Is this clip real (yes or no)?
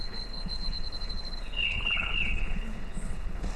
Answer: no